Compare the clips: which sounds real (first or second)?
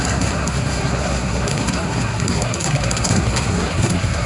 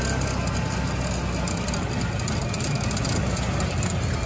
second